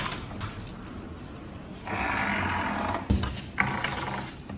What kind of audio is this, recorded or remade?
recorded